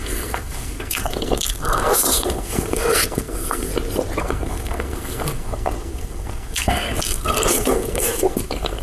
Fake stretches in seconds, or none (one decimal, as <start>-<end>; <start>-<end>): 0.0-3.7; 4.2-8.8